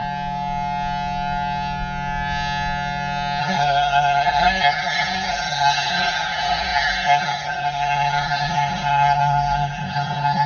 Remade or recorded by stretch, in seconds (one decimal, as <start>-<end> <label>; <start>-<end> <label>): 0.0-3.4 recorded; 3.4-10.5 remade